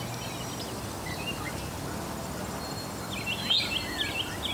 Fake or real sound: real